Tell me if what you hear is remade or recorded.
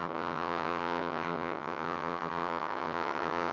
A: remade